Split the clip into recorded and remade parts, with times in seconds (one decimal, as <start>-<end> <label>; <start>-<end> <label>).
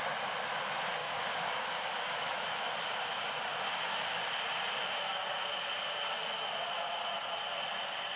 0.0-1.0 recorded; 1.0-2.7 remade; 2.7-8.2 recorded